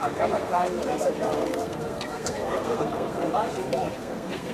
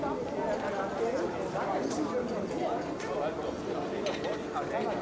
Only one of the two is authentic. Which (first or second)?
second